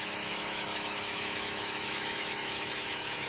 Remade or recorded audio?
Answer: remade